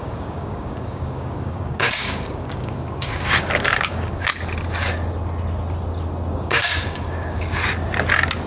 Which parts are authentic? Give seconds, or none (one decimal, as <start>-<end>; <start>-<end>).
4.3-6.3; 7.6-8.5